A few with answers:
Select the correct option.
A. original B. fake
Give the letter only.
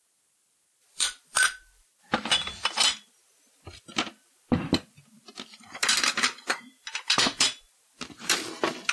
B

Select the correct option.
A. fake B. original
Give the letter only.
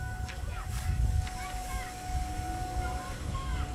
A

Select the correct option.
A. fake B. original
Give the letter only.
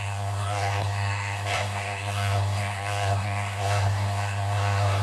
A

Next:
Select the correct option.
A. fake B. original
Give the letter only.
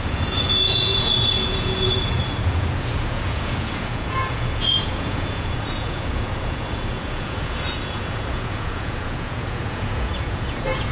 A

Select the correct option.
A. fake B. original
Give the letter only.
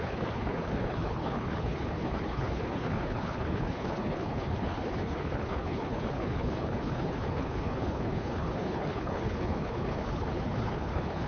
A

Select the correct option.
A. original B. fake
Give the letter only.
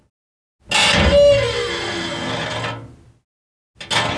A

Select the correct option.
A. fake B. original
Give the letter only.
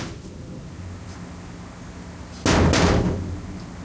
B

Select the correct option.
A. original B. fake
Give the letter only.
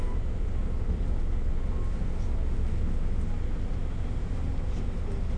A